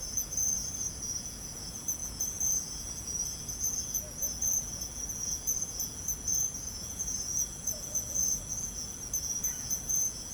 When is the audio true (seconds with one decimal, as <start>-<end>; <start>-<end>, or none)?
none